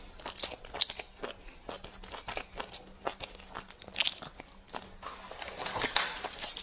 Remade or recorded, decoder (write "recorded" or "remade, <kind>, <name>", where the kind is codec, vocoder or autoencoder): recorded